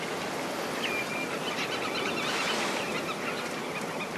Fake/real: real